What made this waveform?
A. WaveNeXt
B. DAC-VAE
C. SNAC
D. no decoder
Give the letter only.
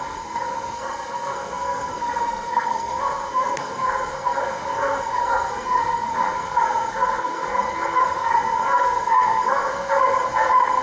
C